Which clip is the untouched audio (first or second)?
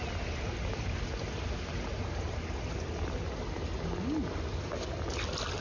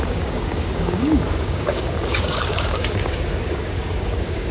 first